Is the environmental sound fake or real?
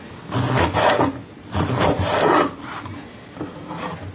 real